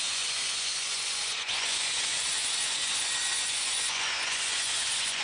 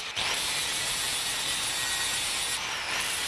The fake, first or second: first